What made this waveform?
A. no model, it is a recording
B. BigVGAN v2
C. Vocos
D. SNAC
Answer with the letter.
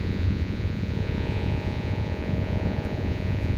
C